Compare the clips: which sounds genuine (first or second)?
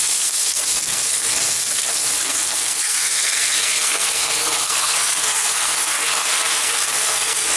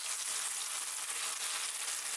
second